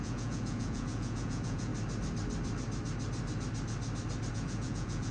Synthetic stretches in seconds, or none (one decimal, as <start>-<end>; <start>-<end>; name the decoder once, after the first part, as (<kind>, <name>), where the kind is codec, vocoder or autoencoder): 0.0-1.7 (vocoder, Vocos); 4.3-5.1